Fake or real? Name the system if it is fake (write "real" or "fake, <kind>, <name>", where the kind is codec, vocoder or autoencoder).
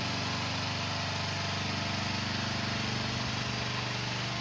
real